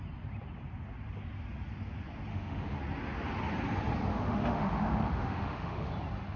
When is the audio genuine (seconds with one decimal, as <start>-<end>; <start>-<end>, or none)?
0.0-2.3; 2.8-4.1; 5.9-6.4